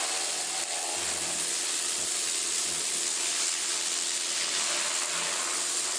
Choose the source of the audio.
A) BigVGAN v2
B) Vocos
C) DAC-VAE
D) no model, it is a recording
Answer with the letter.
D